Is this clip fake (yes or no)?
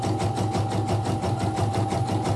no